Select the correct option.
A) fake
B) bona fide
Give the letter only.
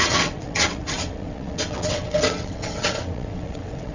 A